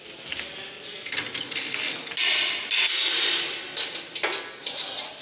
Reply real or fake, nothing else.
real